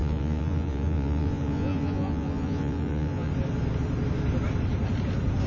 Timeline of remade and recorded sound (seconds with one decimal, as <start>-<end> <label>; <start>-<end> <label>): 0.0-3.3 remade; 3.3-5.5 recorded